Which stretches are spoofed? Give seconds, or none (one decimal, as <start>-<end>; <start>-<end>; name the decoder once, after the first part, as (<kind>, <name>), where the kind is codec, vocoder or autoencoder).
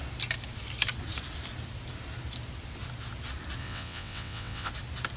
3.6-4.7 (vocoder, WaveNeXt)